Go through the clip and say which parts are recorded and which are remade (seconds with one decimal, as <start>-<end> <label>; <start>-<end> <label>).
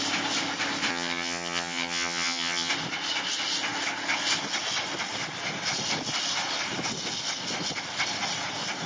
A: 0.0-0.9 recorded; 0.9-2.7 remade; 2.7-8.9 recorded